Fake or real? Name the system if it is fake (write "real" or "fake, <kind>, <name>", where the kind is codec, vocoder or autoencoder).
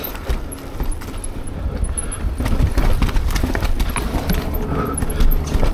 real